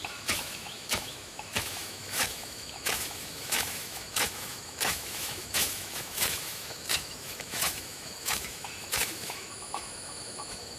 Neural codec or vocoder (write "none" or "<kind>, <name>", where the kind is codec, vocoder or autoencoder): autoencoder, DAC-VAE